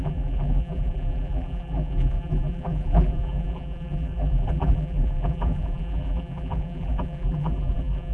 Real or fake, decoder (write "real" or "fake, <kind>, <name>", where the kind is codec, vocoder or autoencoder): fake, vocoder, BigVGAN v2